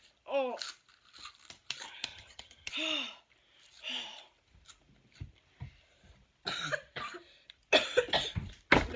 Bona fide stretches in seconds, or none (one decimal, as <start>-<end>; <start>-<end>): 0.0-2.1; 2.7-9.0